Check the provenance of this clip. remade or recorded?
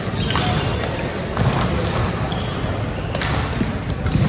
recorded